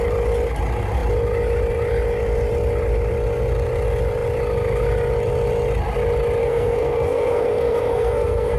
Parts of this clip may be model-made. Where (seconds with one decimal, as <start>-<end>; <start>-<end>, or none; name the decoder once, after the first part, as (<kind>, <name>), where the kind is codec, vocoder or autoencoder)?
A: 6.4-8.6 (codec, SNAC)